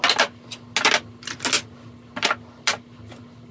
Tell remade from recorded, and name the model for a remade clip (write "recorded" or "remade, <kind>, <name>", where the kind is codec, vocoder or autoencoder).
recorded